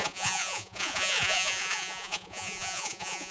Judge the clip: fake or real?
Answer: fake